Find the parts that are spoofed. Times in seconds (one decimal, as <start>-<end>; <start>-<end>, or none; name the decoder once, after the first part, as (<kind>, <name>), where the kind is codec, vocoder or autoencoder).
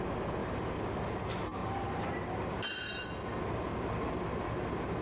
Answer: 0.4-0.9 (vocoder, BigVGAN v2); 1.6-3.1